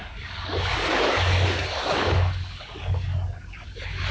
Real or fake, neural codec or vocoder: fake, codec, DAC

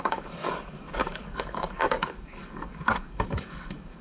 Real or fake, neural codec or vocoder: fake, codec, DAC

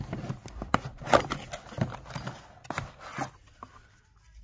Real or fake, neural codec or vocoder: real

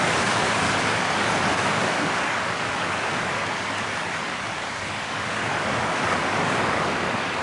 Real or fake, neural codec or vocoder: fake, codec, DAC